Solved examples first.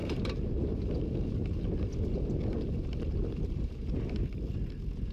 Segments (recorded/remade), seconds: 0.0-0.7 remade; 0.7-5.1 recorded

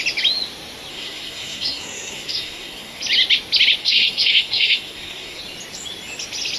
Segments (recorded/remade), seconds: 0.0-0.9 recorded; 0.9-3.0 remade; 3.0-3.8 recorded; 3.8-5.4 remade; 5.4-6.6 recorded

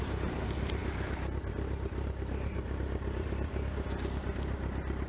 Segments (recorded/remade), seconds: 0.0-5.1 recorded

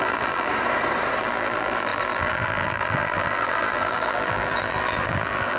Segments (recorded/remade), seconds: 0.0-0.5 remade; 0.5-1.2 recorded; 1.2-5.6 remade